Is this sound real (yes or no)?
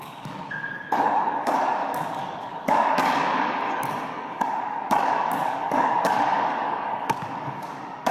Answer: no